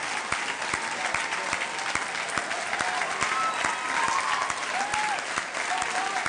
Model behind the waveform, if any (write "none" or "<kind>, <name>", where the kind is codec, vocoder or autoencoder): none